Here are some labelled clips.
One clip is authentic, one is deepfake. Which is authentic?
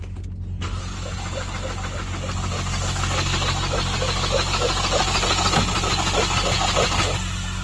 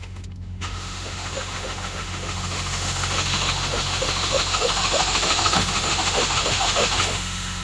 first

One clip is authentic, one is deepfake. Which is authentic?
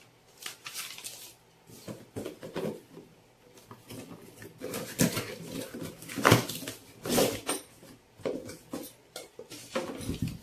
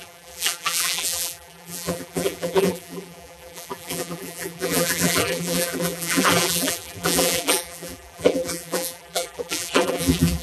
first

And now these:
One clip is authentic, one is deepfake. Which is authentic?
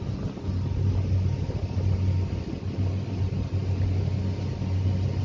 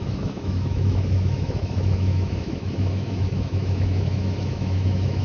first